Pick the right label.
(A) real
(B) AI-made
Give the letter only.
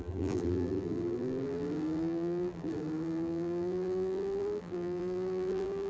B